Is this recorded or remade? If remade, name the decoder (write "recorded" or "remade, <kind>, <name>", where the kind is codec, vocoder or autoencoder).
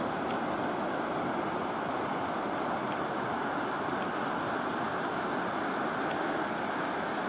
recorded